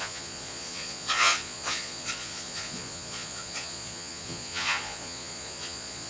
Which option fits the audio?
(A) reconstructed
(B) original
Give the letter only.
A